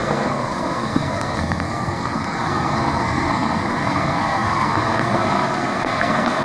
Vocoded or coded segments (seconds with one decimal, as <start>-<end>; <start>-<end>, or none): 0.0-6.4